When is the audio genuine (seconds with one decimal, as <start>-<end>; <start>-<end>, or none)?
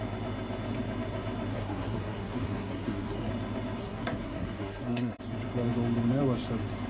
0.0-1.5; 3.3-3.8; 5.2-6.9